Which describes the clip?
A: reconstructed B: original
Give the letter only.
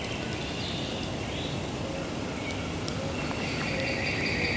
B